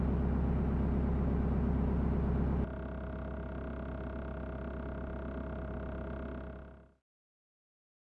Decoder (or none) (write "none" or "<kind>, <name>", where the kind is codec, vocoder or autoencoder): none